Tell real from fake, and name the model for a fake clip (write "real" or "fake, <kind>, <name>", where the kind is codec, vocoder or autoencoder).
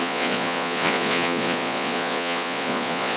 fake, vocoder, Vocos